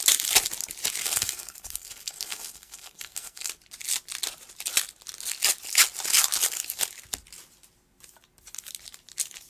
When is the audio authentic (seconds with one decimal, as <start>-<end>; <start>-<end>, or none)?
0.0-1.0; 3.5-9.5